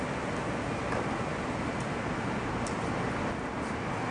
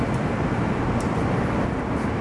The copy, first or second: second